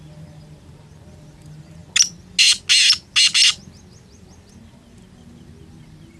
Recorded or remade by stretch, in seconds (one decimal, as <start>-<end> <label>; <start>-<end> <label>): 0.0-6.2 recorded